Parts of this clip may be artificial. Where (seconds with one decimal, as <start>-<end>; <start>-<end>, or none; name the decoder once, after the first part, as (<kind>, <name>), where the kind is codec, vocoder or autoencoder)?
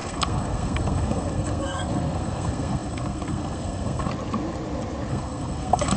0.0-4.1 (codec, SNAC); 5.1-6.0